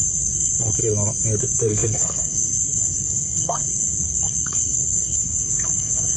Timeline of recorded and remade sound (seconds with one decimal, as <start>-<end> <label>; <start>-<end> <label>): 0.0-0.8 remade; 0.8-1.4 recorded; 1.4-6.2 remade